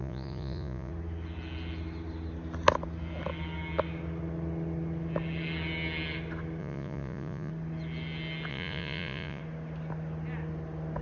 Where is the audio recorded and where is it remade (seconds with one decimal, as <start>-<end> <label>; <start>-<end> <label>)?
0.0-0.9 remade; 0.9-6.6 recorded; 6.6-7.5 remade; 7.5-8.5 recorded; 8.5-9.4 remade; 9.4-11.0 recorded